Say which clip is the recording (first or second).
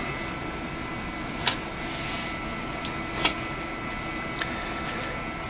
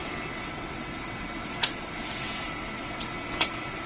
first